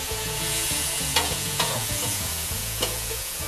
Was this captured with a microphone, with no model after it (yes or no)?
no